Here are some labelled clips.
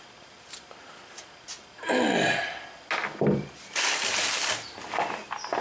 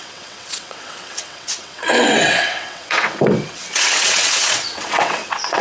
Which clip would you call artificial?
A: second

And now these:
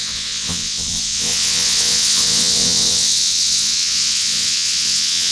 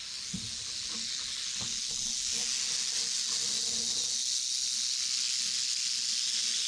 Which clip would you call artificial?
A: first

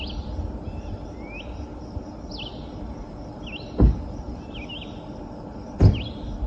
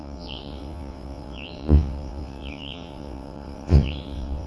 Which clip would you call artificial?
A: second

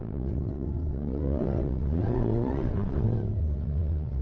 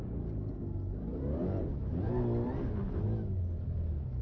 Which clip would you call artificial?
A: first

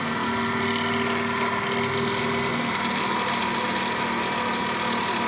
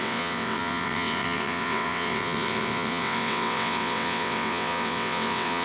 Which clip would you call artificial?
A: second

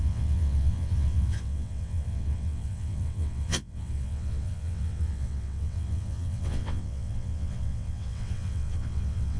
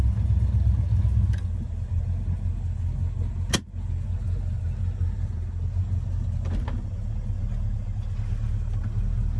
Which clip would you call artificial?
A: first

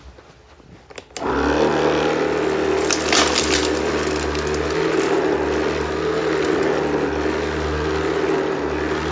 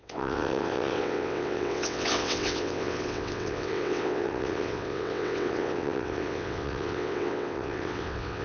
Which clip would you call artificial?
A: second